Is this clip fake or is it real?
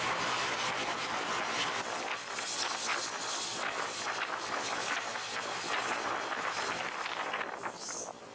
real